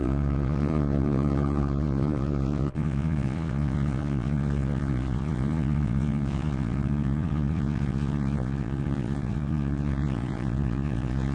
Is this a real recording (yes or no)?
no